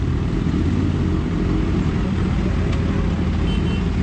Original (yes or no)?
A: yes